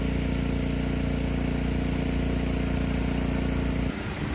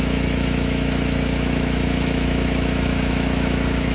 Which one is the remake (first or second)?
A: second